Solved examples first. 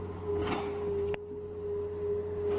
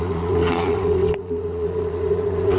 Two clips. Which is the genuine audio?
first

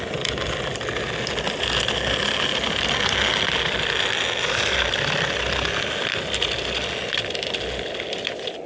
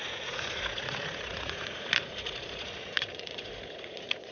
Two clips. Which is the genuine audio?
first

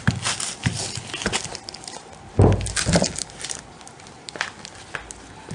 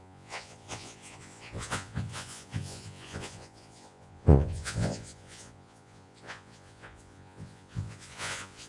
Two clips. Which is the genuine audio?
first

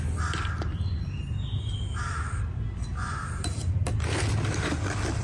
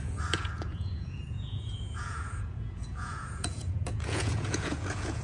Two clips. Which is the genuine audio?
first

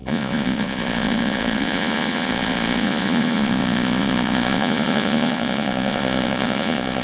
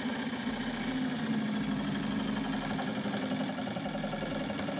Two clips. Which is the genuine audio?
second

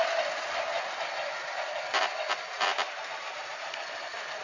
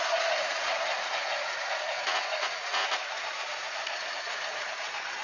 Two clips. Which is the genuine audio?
first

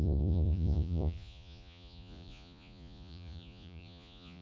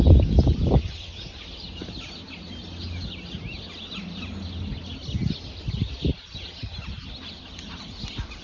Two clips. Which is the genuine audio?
second